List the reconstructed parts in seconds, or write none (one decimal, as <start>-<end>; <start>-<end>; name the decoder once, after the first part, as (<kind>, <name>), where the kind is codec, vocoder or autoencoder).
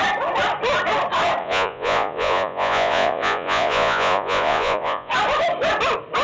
1.4-5.1 (vocoder, Vocos)